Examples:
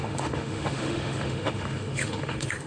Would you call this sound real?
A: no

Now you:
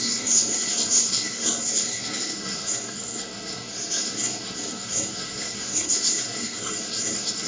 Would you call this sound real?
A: no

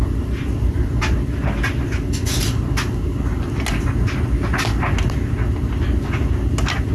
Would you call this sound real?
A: yes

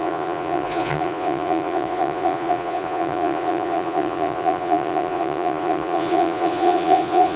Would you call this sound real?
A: no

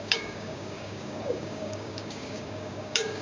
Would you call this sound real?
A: no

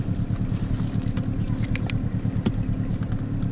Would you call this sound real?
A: yes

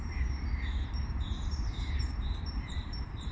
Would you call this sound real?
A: no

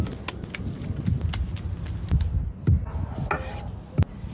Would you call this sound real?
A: yes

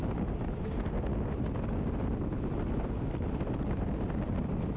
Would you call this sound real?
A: yes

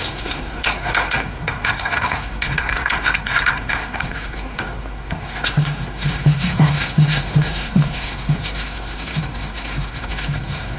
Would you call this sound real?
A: no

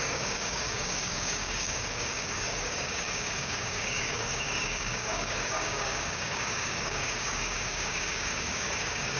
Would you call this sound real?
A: no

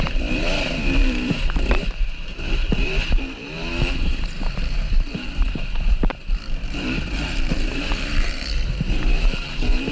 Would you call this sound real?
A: no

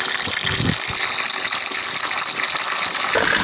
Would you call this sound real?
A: yes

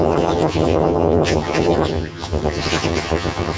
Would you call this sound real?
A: no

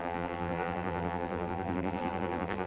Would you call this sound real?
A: no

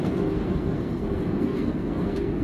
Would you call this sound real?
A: no